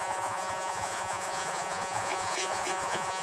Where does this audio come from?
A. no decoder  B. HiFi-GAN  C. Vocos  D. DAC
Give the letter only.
C